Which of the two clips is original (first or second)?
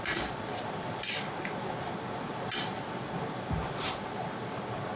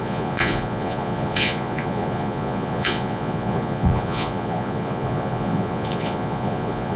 first